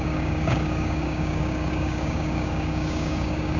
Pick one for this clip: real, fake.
fake